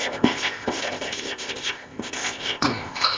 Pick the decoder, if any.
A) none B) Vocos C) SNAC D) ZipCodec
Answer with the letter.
D